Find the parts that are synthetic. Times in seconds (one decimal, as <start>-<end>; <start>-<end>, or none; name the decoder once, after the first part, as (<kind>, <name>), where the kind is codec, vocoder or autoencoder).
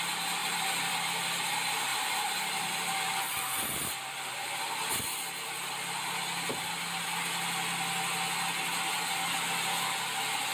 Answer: 0.4-0.9 (vocoder, BigVGAN v2); 1.9-4.6